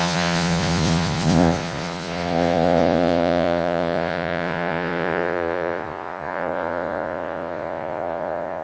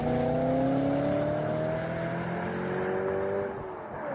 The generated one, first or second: first